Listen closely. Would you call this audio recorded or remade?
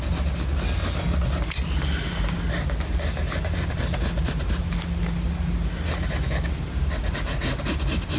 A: recorded